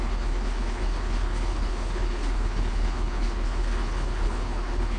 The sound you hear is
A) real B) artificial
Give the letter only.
B